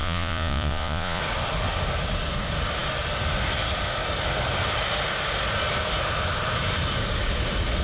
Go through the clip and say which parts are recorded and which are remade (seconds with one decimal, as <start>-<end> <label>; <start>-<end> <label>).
0.0-1.2 remade; 1.2-7.8 recorded